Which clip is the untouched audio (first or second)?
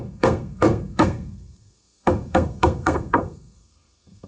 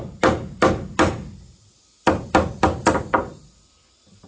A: second